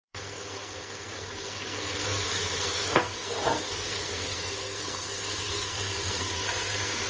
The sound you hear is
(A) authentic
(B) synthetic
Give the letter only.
B